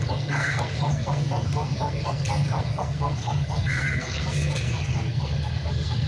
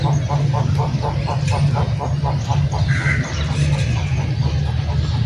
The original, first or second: second